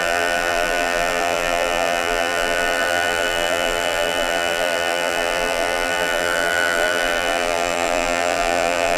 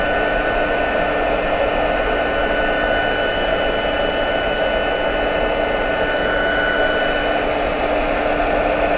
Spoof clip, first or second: first